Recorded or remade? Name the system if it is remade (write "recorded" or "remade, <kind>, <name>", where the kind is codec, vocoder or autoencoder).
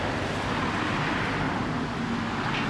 recorded